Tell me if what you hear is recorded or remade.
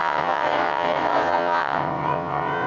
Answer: remade